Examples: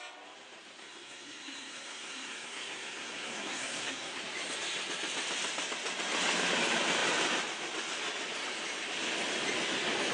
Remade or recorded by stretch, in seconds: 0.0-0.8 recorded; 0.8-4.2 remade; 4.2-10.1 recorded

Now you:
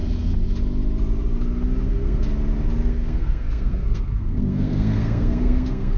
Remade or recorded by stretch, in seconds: 0.0-1.8 recorded; 1.8-2.3 remade; 2.3-2.9 recorded; 2.9-6.0 remade

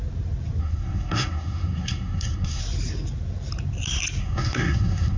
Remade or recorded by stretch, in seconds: 0.0-0.6 recorded; 0.6-2.6 remade; 2.6-4.2 recorded; 4.2-5.2 remade